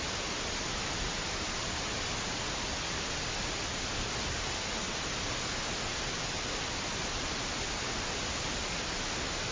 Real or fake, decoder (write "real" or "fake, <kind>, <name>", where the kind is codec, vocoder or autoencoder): real